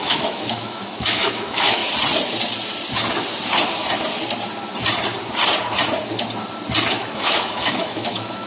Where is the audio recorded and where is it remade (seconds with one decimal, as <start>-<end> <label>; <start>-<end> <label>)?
0.0-1.8 remade; 1.8-6.9 recorded; 6.9-8.5 remade